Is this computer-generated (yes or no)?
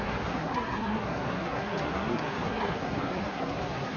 yes